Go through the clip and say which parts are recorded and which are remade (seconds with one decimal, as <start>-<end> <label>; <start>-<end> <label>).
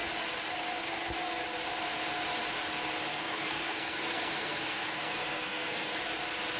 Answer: 0.0-3.1 recorded; 3.1-6.0 remade; 6.0-6.6 recorded